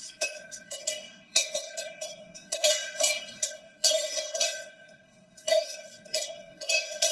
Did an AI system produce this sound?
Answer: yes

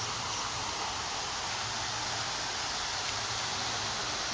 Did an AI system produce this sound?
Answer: no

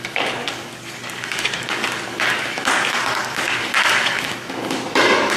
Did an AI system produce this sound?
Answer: yes